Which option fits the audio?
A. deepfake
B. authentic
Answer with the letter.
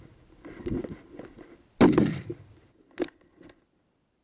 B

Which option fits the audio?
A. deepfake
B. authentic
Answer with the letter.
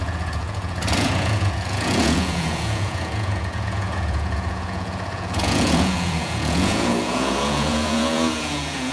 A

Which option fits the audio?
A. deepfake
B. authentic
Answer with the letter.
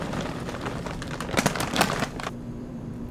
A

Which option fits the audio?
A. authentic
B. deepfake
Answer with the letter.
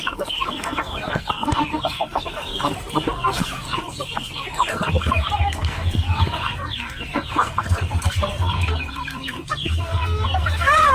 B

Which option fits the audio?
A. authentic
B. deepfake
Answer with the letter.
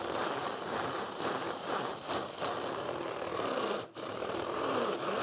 B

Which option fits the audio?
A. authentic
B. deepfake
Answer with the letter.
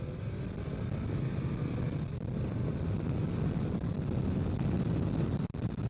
A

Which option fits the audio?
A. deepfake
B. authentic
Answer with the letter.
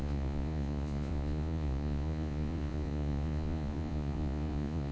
A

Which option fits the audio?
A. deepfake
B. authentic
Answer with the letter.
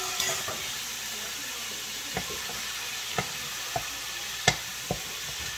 B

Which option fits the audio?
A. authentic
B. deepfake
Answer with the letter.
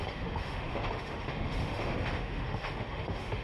B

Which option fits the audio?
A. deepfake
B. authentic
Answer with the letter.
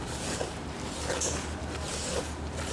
B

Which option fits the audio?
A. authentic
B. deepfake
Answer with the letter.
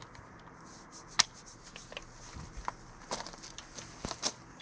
A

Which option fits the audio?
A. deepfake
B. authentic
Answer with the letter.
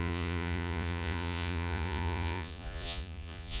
A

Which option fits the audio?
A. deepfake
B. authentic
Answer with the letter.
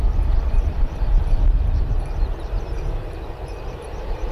A